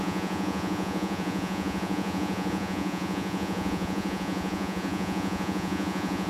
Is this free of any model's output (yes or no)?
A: no